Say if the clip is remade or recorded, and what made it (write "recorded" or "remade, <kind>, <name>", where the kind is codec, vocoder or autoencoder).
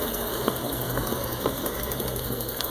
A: remade, codec, SNAC